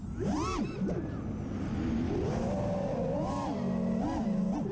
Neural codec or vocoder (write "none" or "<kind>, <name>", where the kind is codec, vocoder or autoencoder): none